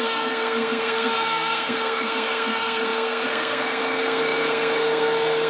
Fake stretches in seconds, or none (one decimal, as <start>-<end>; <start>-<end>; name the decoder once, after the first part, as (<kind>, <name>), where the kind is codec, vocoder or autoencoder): 0.0-5.5 (codec, SNAC)